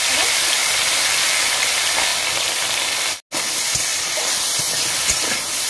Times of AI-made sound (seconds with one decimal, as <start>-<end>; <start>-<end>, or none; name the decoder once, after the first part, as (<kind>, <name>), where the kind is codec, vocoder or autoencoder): 0.6-1.2 (vocoder, BigVGAN v2); 3.9-4.6